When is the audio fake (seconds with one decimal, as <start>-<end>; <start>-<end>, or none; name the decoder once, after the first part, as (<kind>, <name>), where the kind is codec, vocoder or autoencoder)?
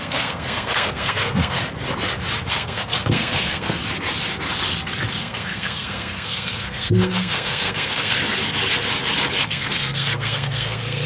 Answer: 0.0-1.6 (codec, SNAC); 2.5-3.8; 5.2-8.2; 9.4-11.1